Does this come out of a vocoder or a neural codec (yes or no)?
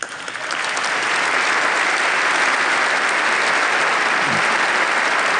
no